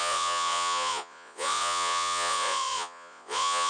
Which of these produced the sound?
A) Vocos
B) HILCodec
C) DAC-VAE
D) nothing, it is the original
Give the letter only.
A